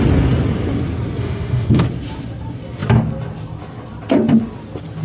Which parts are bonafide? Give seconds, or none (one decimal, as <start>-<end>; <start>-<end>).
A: 0.0-1.2; 1.8-5.0